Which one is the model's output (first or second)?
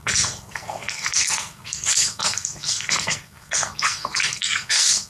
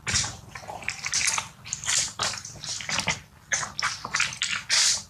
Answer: first